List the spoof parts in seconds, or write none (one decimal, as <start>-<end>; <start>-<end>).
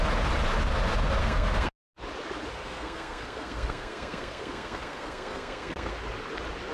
1.2-1.7; 2.6-5.9